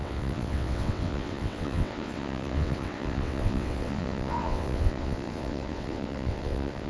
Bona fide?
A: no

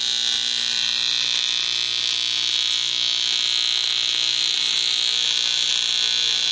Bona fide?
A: yes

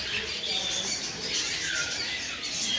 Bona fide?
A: yes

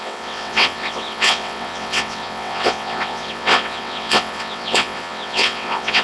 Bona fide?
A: no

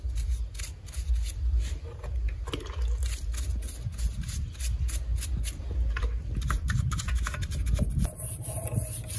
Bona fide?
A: yes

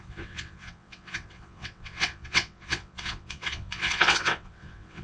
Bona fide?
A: no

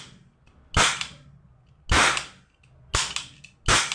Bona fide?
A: yes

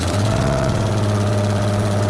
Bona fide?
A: no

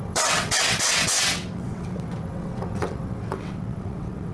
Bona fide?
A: no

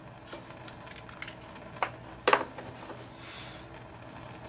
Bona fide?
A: yes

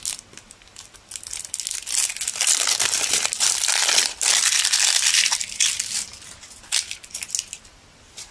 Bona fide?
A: yes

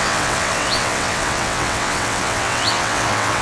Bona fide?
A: no